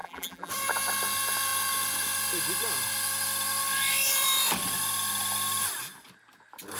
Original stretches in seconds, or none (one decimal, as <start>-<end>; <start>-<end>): 0.5-6.8